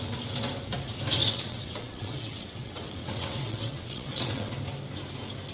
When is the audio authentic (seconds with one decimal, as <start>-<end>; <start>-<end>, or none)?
0.0-1.2; 4.5-5.5